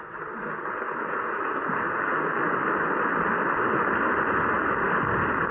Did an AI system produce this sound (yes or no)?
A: no